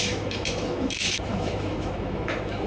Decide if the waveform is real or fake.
fake